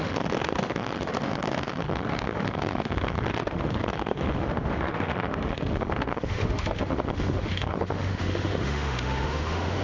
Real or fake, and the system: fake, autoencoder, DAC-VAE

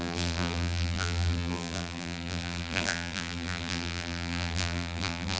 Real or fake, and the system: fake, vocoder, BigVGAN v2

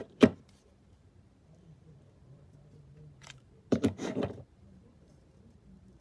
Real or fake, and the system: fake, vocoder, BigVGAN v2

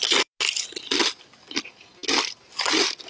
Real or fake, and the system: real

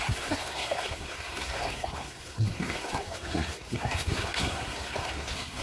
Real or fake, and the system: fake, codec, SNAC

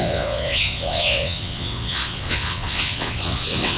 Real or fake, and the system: fake, vocoder, WaveNeXt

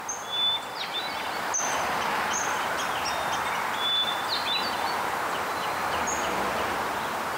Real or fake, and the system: real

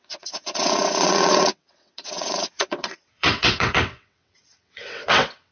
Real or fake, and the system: fake, vocoder, WaveNeXt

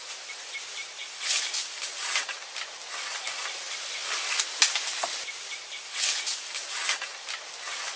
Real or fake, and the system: real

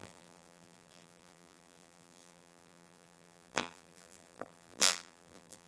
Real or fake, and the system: fake, vocoder, BigVGAN v2